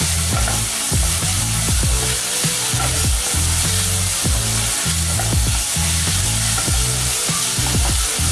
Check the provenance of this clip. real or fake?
real